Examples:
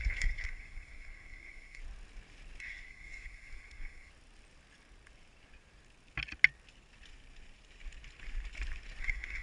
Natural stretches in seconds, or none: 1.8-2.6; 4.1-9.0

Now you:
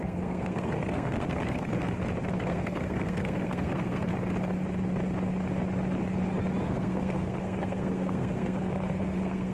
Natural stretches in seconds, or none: 1.7-2.3; 4.1-6.6

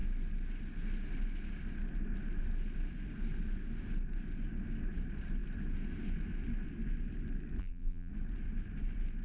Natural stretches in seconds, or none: 0.0-7.6; 8.1-9.2

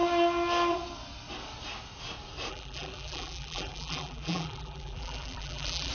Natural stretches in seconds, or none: 0.0-2.5

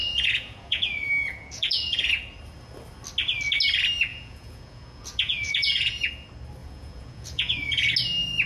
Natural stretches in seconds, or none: 2.1-4.1; 6.1-6.6; 7.9-8.5

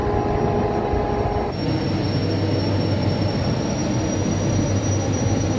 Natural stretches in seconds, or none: 0.0-3.0; 3.8-4.5